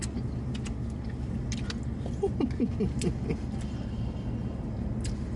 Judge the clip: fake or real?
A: real